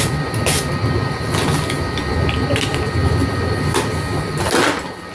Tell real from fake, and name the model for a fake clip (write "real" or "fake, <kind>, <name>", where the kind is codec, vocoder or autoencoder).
real